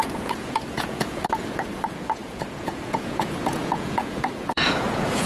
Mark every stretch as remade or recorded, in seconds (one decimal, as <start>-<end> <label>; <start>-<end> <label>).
0.0-5.3 remade